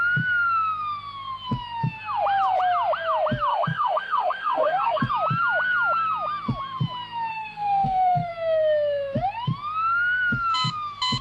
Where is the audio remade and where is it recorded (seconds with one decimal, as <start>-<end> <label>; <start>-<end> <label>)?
0.0-3.5 recorded; 3.5-5.1 remade; 5.1-7.3 recorded; 7.3-8.3 remade; 8.3-11.2 recorded